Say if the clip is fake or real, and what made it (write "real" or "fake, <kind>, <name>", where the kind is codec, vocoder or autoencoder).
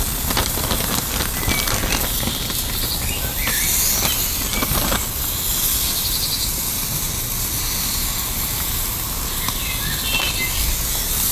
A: real